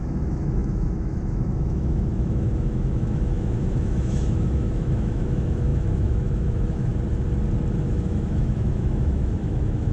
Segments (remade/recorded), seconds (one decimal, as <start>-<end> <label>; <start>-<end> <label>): 0.0-6.9 remade; 6.9-7.8 recorded; 7.8-9.9 remade